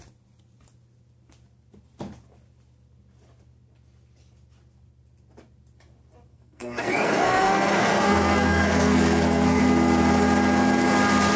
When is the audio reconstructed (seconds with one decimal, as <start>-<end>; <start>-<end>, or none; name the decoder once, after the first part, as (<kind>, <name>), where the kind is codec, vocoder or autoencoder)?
6.3-9.6 (codec, SNAC)